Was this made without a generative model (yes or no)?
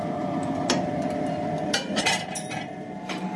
no